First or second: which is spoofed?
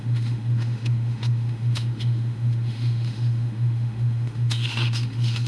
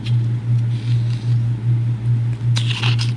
first